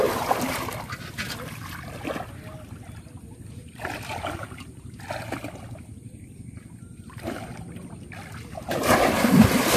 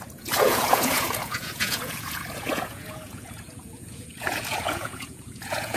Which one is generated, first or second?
second